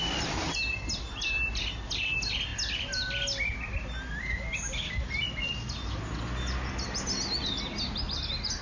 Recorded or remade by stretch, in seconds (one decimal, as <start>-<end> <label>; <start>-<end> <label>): 0.0-0.8 remade; 0.8-8.6 recorded